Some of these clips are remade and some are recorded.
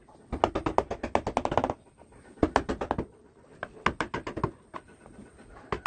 recorded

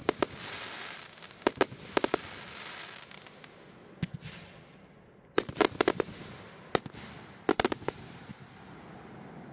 recorded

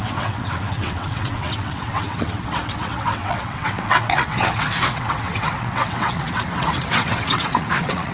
remade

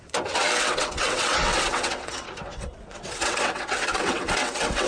remade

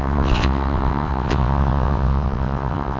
remade